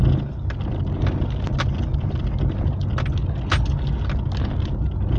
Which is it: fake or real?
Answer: real